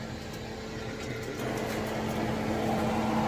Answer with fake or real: real